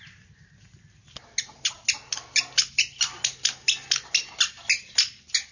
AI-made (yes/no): no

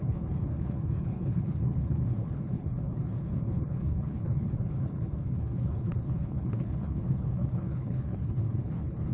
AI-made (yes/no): yes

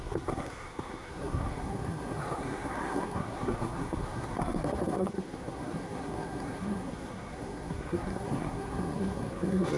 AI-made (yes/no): yes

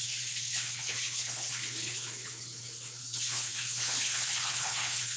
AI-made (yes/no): yes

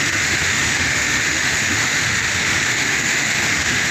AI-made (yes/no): yes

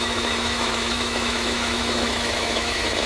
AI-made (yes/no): yes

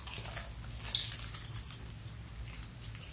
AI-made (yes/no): no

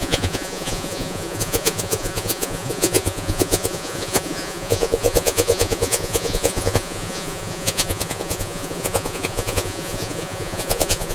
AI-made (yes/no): yes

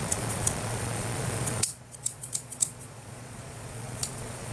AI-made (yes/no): yes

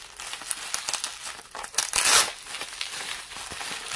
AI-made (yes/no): no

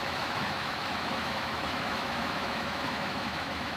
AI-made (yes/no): yes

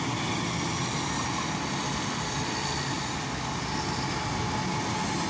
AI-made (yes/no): no